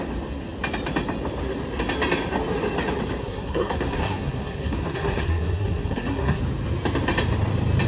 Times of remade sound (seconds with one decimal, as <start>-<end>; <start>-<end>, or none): 3.2-6.4